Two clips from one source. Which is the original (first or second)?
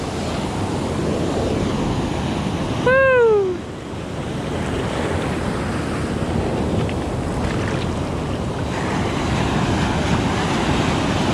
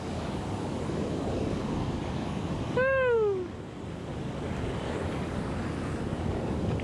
first